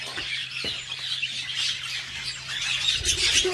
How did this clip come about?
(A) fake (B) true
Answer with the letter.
B